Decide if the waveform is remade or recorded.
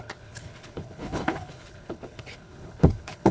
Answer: remade